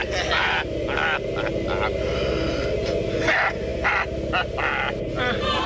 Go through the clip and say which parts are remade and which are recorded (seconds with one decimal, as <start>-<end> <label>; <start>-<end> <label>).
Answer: 0.0-5.7 recorded